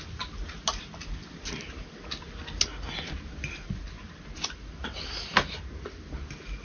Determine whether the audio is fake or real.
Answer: real